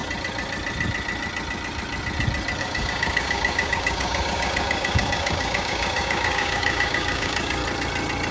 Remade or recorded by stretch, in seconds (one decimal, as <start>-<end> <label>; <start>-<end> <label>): 0.0-2.6 recorded; 2.6-7.6 remade; 7.6-8.3 recorded